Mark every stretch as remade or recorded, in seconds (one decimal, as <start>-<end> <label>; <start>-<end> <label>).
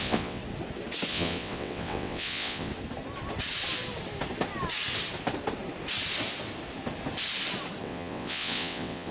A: 0.0-0.4 remade; 0.4-1.1 recorded; 1.1-2.7 remade; 2.7-7.8 recorded; 7.8-9.1 remade